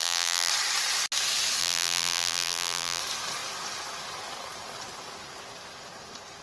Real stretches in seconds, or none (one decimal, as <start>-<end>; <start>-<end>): 0.5-1.6; 3.0-6.4